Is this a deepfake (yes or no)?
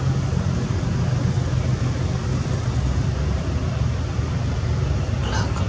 no